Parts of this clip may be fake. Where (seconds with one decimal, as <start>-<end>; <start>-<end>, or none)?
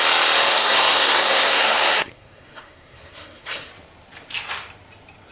0.5-3.7